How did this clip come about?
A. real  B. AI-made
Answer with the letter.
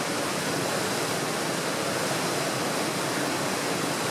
A